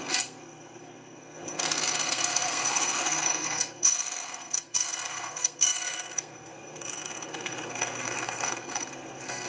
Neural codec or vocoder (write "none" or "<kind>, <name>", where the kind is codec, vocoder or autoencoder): codec, SNAC